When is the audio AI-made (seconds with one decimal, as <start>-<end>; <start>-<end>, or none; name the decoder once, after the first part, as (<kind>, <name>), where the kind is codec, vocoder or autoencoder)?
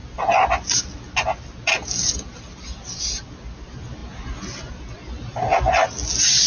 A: none